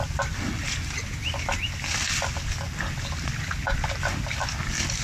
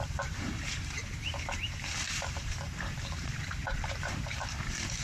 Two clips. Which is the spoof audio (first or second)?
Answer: second